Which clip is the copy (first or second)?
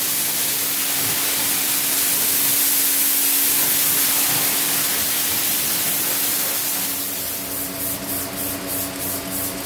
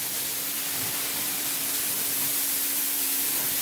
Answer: second